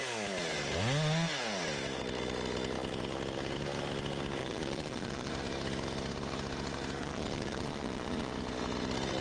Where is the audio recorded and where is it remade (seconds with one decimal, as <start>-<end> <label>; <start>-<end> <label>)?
0.0-4.4 recorded; 4.4-5.3 remade; 5.3-7.0 recorded; 7.0-8.3 remade; 8.3-9.2 recorded

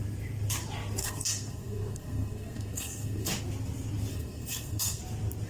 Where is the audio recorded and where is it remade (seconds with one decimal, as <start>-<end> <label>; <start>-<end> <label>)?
0.0-1.0 recorded; 1.0-3.3 remade; 3.3-4.1 recorded; 4.1-5.0 remade; 5.0-5.5 recorded

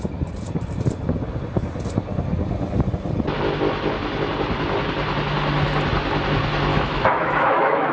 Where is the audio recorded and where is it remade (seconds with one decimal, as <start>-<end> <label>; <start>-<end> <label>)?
0.0-6.7 recorded; 6.7-7.9 remade

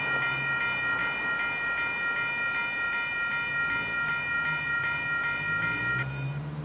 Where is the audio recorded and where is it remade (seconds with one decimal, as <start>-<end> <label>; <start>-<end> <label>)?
0.0-6.6 recorded

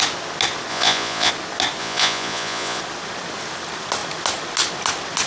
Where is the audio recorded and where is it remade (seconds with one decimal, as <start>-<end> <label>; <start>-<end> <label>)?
0.0-0.7 recorded; 0.7-1.3 remade; 1.3-1.8 recorded; 1.8-2.8 remade; 2.8-5.3 recorded

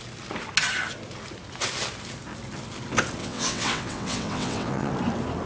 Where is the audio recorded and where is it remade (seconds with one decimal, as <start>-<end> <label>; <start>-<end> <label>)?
0.0-3.2 recorded; 3.2-4.9 remade; 4.9-5.5 recorded